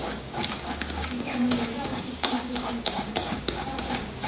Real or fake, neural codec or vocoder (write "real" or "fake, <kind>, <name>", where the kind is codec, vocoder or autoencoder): fake, codec, DAC